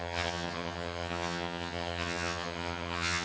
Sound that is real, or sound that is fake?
fake